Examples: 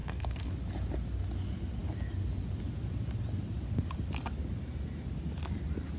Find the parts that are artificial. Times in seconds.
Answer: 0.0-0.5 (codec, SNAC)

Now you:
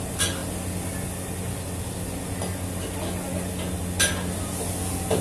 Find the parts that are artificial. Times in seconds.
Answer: none

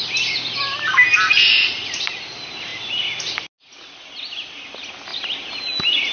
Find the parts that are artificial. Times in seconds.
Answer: none

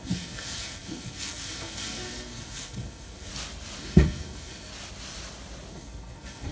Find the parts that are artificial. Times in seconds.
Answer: 0.0-3.3 (codec, SNAC); 3.8-4.7; 5.7-6.5

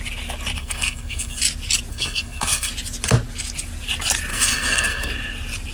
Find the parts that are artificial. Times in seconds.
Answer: 0.6-1.4 (codec, SNAC); 1.9-2.7; 4.3-5.1

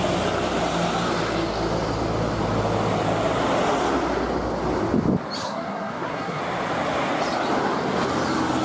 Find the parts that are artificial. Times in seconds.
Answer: 5.4-6.4 (codec, SNAC)

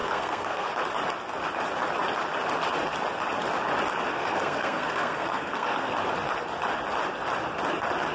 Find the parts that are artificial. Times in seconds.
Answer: 0.0-0.7 (codec, SNAC); 4.1-5.9

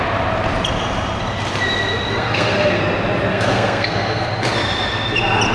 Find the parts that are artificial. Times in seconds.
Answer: 2.1-2.8 (codec, SNAC); 3.3-4.3